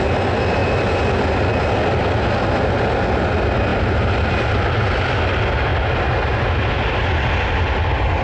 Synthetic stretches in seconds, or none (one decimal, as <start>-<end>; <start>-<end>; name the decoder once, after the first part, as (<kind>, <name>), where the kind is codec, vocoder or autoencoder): none